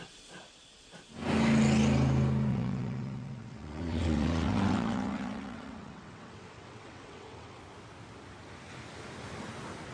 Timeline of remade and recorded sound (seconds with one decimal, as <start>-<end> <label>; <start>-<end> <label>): 0.0-2.5 recorded; 2.5-7.6 remade; 7.6-9.9 recorded